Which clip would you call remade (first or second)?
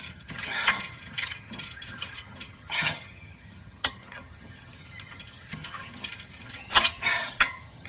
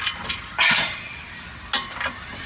first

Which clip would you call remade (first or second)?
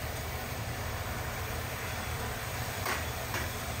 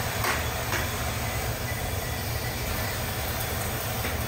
first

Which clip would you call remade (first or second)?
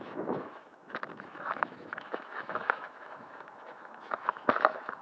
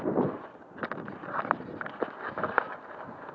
first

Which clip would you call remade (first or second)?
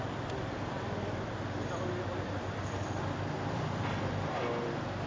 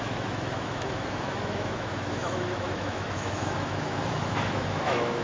second